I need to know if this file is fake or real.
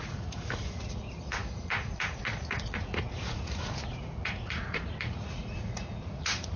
fake